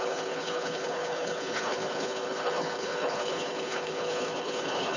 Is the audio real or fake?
fake